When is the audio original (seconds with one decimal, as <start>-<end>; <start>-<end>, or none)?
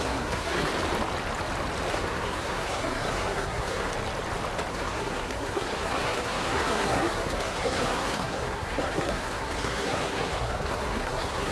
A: 0.7-1.9; 3.9-4.7